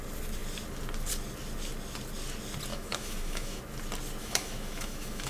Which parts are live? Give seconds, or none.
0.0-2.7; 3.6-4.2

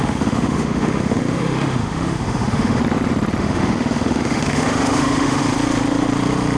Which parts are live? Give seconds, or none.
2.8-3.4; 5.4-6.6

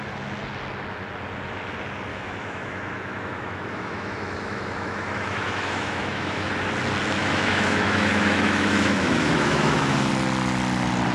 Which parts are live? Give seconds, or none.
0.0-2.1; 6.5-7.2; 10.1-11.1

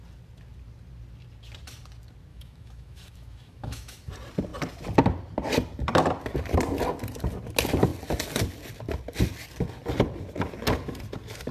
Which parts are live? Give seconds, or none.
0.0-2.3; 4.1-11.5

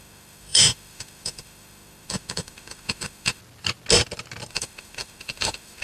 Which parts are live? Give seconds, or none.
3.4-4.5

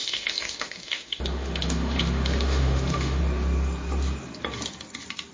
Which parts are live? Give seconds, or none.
3.2-5.3